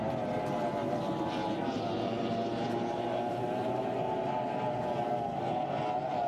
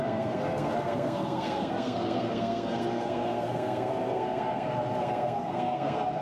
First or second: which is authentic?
first